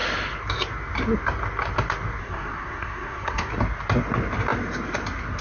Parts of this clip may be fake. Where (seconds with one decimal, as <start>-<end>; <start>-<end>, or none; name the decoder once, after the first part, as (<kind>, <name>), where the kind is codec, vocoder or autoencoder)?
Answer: 2.2-3.5 (codec, SNAC)